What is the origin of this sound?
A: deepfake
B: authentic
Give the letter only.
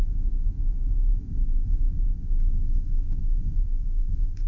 A